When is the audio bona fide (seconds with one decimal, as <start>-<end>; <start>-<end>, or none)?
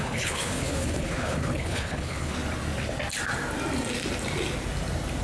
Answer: 2.3-5.2